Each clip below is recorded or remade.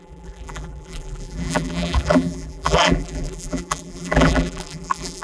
remade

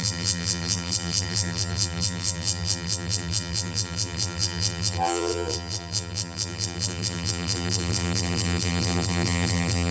remade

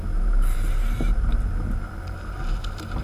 remade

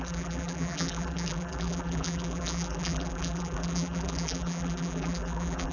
remade